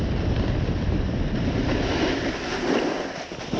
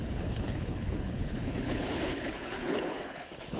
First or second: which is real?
first